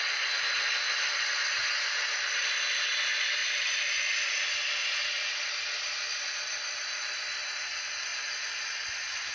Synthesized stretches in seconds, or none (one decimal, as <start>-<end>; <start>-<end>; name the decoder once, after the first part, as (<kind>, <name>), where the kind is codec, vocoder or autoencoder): none